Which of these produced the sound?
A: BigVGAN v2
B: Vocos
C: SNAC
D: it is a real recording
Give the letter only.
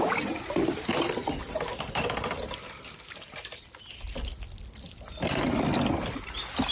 D